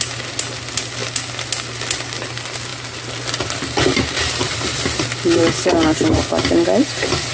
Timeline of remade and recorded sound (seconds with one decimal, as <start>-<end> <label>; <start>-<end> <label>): 0.0-7.3 recorded